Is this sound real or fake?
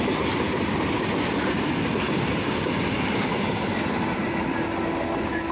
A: real